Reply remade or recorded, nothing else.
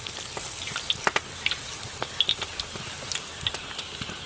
recorded